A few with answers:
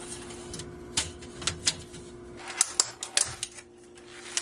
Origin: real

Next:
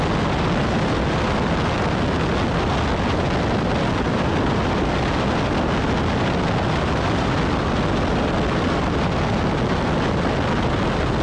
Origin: real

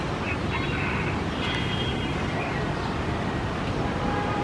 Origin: real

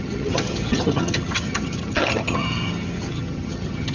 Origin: fake